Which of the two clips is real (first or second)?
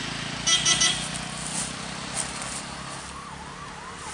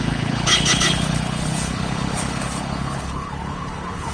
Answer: first